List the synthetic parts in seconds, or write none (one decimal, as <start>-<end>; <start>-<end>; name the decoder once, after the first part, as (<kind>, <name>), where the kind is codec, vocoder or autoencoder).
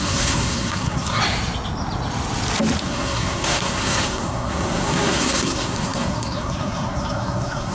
0.0-1.2 (codec, SNAC); 2.8-7.7